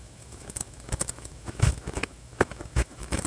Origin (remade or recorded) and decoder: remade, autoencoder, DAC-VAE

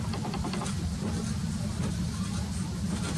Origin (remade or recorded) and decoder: recorded